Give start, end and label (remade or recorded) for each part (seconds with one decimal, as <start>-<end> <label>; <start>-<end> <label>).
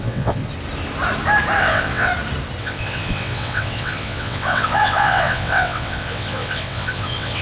0.0-0.4 remade; 0.4-1.6 recorded; 1.6-2.1 remade; 2.1-2.6 recorded; 2.6-7.4 remade